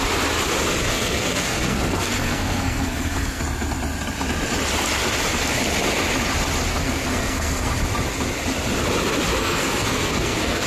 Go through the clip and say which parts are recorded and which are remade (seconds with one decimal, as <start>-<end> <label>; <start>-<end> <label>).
0.0-0.9 recorded; 0.9-3.4 remade; 3.4-6.7 recorded; 6.7-7.8 remade; 7.8-9.4 recorded; 9.4-10.7 remade